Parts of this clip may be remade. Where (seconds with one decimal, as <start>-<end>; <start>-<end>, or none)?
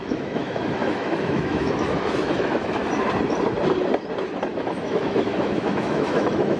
0.0-2.8; 4.5-6.6